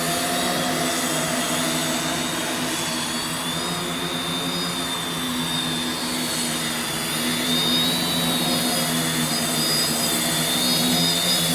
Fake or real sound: real